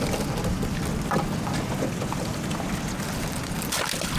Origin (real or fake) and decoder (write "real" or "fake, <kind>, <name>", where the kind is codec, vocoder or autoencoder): real